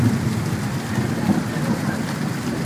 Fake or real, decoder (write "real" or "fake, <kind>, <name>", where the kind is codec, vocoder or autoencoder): real